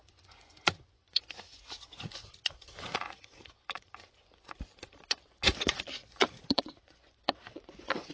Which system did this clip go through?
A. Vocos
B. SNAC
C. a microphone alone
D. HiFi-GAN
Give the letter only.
A